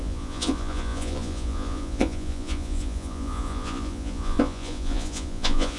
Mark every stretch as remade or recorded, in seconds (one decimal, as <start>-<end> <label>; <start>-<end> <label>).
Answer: 0.0-5.8 remade